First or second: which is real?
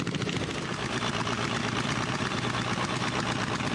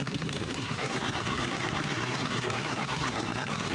first